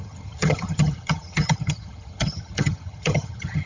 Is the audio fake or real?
fake